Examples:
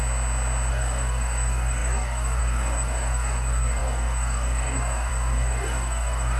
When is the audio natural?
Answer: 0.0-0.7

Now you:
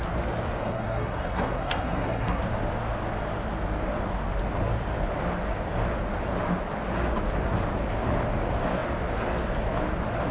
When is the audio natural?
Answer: 0.0-0.6; 2.4-10.3

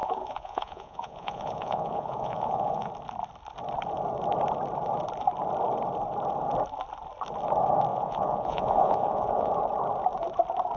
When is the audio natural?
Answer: 2.9-7.9; 9.5-10.8